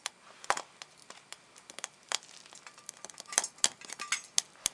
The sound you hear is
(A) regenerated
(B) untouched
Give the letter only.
B